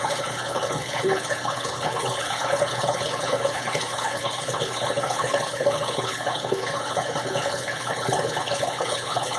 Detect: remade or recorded remade